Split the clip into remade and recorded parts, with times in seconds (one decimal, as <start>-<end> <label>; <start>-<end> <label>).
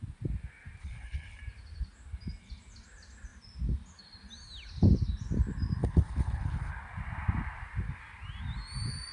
0.0-0.8 recorded; 0.8-1.4 remade; 1.4-5.8 recorded; 5.8-6.7 remade; 6.7-9.1 recorded